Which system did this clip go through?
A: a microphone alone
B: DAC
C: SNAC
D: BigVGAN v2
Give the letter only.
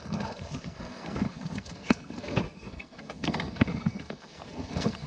C